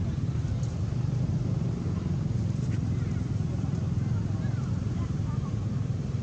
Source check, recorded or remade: remade